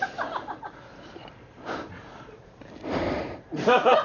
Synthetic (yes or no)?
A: yes